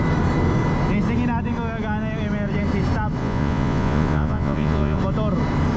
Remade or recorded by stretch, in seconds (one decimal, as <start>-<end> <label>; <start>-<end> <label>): 0.0-3.2 recorded; 3.2-5.0 remade; 5.0-5.8 recorded